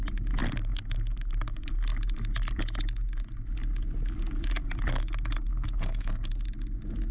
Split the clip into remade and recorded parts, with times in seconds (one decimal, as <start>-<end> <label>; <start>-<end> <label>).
0.0-5.5 recorded; 5.5-6.3 remade; 6.3-7.1 recorded